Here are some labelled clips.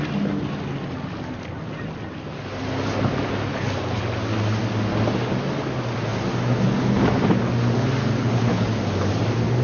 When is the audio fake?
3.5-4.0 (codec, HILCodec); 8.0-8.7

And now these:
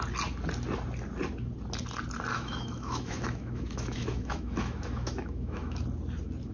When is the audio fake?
2.3-5.8 (autoencoder, DAC-VAE)